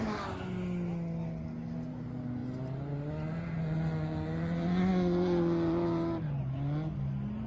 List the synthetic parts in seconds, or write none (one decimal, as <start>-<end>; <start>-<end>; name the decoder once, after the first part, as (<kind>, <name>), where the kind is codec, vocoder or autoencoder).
none